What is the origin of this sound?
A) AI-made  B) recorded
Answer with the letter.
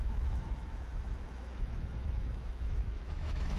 A